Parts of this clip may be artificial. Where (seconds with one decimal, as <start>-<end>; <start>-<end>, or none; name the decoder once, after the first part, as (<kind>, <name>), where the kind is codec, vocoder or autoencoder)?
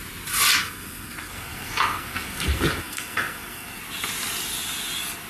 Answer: 0.6-3.8 (codec, SNAC)